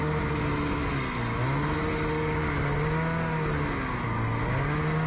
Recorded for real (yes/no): yes